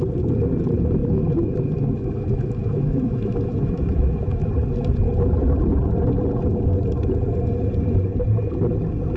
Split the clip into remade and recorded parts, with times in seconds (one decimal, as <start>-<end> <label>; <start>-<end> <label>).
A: 0.0-1.0 recorded; 1.0-4.5 remade; 4.5-9.2 recorded